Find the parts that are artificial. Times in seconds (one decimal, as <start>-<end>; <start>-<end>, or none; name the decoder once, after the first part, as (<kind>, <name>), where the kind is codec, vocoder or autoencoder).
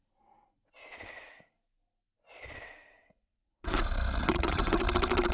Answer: 3.0-3.8 (vocoder, WaveNeXt); 4.2-4.8